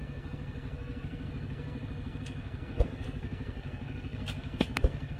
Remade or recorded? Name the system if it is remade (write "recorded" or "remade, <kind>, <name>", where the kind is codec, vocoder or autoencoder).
remade, codec, SNAC